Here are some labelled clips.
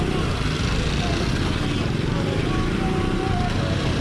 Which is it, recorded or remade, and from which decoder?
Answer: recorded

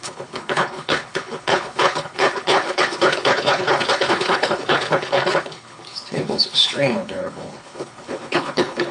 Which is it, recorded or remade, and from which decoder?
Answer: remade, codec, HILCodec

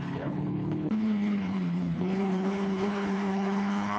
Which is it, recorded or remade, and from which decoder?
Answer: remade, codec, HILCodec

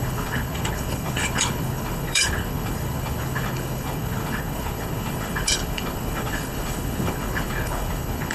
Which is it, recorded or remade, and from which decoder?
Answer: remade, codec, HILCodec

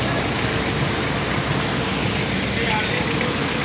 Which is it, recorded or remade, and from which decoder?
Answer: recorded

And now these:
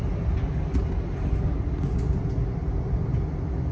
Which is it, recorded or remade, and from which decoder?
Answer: recorded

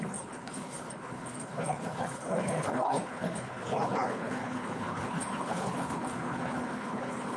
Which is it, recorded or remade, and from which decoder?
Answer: remade, codec, HILCodec